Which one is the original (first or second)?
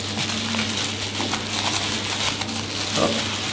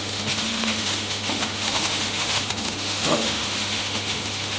first